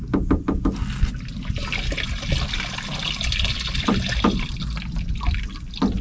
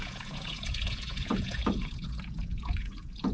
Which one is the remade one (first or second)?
second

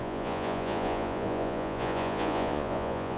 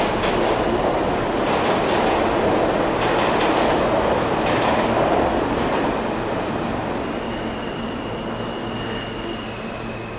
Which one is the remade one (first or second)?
first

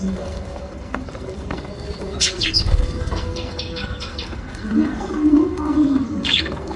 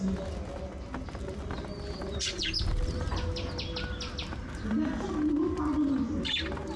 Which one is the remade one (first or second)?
first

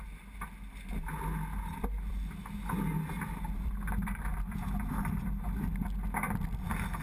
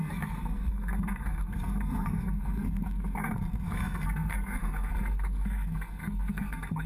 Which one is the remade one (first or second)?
second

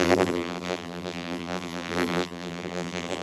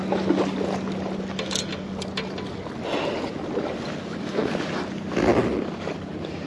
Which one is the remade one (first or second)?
first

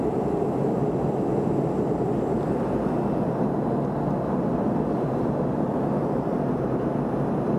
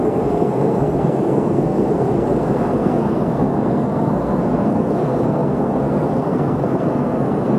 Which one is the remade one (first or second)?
second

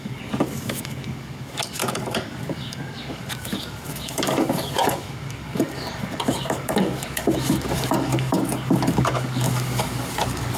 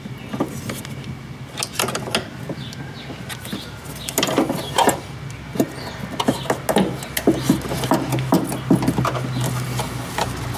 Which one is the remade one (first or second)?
first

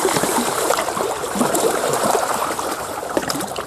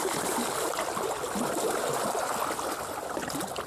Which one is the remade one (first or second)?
first